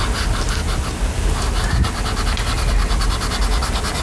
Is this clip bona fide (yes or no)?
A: yes